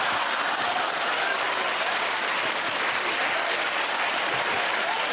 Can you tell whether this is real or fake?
real